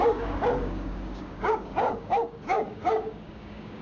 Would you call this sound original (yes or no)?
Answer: no